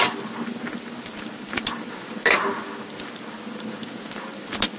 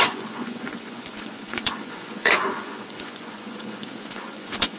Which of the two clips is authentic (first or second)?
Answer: first